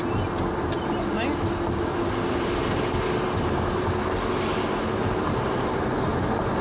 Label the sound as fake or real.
real